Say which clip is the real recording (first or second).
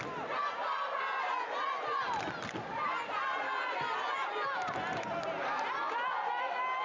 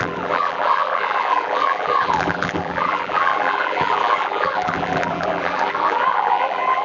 first